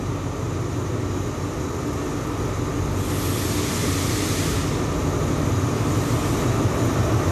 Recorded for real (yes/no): yes